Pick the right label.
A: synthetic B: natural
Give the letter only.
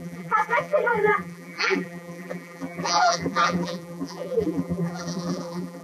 A